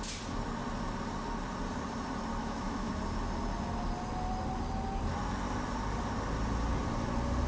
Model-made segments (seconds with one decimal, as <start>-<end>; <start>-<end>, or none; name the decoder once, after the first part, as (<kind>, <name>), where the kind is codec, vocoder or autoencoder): 2.4-2.9 (autoencoder, DAC-VAE)